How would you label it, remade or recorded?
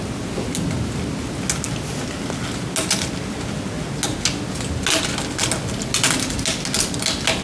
recorded